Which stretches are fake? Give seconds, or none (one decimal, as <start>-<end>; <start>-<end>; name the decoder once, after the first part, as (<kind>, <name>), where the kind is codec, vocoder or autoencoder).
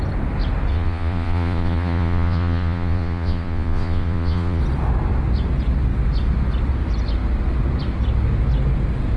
0.7-4.6 (vocoder, Vocos)